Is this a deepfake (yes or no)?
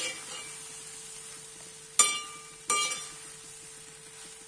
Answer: no